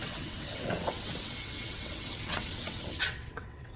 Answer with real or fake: fake